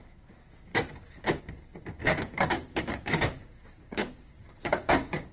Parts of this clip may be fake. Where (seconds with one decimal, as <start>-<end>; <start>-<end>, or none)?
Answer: 0.7-1.4; 2.0-5.3